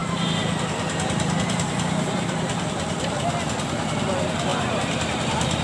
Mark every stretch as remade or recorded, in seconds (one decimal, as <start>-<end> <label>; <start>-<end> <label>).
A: 0.0-3.4 remade; 3.4-4.5 recorded; 4.5-5.6 remade